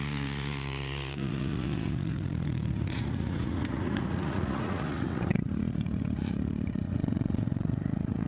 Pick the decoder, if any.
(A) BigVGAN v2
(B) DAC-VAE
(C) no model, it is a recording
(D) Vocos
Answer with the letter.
D